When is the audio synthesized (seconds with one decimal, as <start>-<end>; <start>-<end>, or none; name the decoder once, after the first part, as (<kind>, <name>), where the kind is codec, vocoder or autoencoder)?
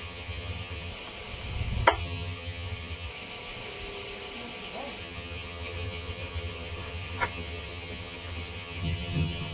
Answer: 0.0-0.9 (vocoder, HiFi-GAN); 2.0-3.1; 5.0-9.5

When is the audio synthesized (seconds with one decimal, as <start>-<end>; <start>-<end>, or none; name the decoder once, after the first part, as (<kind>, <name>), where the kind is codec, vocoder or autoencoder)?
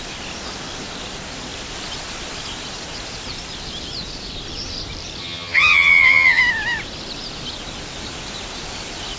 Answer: 5.2-6.4 (vocoder, HiFi-GAN)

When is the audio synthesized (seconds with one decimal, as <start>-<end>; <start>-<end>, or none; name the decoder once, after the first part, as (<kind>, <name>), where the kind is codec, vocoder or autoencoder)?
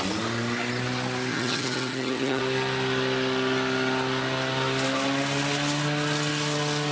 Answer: 1.3-2.4 (vocoder, HiFi-GAN)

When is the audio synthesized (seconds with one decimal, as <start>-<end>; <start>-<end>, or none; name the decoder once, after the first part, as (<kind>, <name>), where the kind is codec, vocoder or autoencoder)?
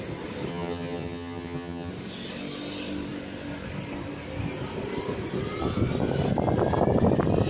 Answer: 0.5-1.9 (vocoder, HiFi-GAN)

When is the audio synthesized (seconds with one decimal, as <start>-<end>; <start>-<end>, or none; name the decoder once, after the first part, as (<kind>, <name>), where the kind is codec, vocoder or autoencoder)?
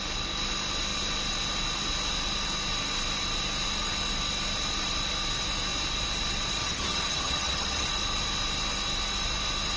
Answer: 6.6-7.9 (vocoder, HiFi-GAN)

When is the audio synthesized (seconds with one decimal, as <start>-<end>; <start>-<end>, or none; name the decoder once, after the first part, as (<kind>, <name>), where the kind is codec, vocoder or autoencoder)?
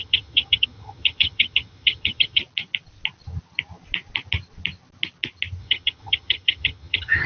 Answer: 0.0-2.4 (vocoder, HiFi-GAN); 5.6-7.3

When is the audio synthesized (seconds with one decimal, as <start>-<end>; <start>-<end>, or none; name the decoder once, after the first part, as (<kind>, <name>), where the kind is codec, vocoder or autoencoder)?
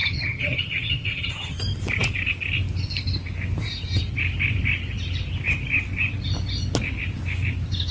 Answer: 0.0-1.6 (vocoder, HiFi-GAN)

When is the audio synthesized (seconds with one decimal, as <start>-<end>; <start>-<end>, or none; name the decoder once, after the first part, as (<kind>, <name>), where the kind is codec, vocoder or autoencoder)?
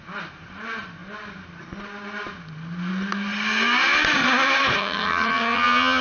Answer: 4.8-6.0 (vocoder, HiFi-GAN)